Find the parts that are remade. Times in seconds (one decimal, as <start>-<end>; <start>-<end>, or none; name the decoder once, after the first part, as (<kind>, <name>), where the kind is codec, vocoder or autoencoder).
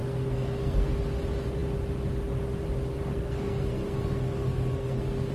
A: 0.0-1.0 (codec, SNAC); 3.1-5.3